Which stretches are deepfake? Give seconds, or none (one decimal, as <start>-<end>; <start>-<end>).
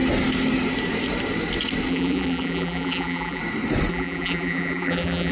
1.9-3.4; 3.9-5.3